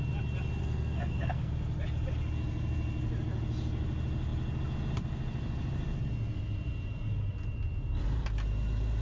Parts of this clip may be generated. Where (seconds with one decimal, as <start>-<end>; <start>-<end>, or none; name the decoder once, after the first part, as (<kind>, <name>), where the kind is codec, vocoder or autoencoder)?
0.6-1.5 (codec, SNAC)